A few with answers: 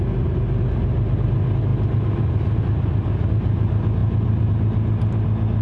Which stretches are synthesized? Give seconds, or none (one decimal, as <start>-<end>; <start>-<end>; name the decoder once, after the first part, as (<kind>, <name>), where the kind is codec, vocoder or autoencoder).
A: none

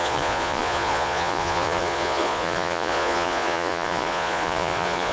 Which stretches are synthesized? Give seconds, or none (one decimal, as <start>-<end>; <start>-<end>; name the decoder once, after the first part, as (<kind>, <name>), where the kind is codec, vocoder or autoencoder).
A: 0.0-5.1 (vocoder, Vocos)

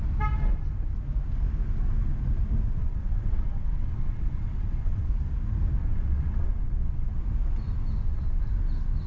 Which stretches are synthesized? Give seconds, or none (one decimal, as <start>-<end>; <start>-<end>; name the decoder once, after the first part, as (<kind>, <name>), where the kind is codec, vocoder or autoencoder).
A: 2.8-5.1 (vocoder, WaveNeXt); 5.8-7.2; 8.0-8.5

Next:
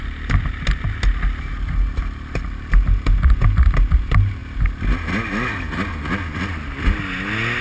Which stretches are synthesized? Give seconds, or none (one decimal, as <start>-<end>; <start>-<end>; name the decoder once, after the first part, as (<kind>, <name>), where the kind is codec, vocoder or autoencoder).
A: none

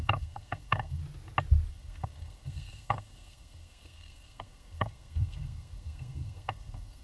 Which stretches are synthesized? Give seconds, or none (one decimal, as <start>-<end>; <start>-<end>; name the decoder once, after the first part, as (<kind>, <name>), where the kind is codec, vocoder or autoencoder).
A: 0.0-1.0 (codec, SNAC); 1.7-7.0

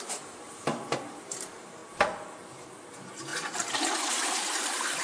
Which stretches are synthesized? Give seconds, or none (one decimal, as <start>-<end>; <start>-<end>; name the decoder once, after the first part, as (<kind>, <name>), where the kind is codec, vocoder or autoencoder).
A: 0.0-1.8 (vocoder, BigVGAN v2); 2.9-5.0